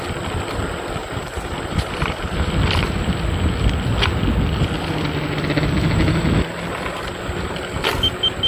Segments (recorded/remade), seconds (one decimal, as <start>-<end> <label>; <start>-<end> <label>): 0.0-1.0 recorded; 1.0-2.5 remade; 2.5-8.5 recorded

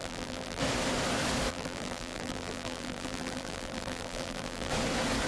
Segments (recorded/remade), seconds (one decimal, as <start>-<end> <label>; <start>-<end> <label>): 0.0-0.6 remade; 0.6-1.5 recorded; 1.5-4.7 remade; 4.7-5.3 recorded

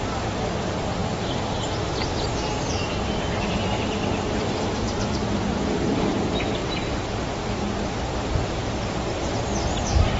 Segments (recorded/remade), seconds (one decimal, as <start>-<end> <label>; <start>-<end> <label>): 0.0-3.6 recorded; 3.6-5.5 remade; 5.5-10.2 recorded

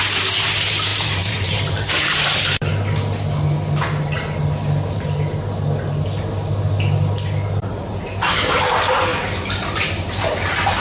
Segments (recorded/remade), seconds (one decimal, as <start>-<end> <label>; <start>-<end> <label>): 0.0-2.7 remade; 2.7-7.6 recorded; 7.6-9.1 remade; 9.1-10.8 recorded

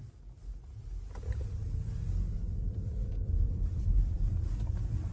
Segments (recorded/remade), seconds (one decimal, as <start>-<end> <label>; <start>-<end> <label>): 0.0-2.3 recorded; 2.3-4.3 remade; 4.3-5.1 recorded